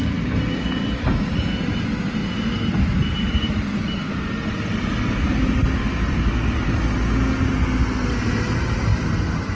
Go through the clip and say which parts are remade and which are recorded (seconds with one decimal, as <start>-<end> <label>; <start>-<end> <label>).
0.0-8.9 recorded; 8.9-9.6 remade